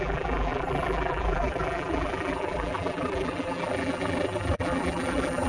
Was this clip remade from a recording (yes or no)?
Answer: yes